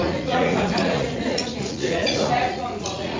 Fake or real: fake